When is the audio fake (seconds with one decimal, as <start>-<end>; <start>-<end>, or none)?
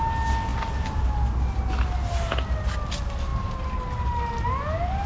none